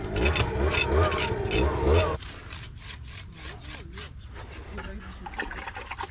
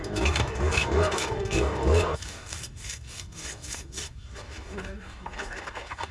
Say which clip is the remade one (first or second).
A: second